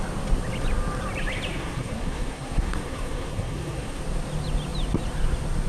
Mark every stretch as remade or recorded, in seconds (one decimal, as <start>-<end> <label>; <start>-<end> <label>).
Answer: 0.0-1.5 recorded; 1.5-4.0 remade; 4.0-5.7 recorded